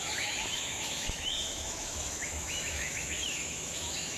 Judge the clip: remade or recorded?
remade